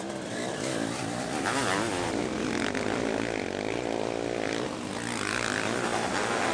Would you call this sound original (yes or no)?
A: yes